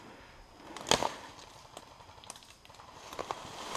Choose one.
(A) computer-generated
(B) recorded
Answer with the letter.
B